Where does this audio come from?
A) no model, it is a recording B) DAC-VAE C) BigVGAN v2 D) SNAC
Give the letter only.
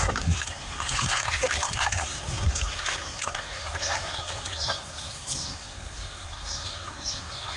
D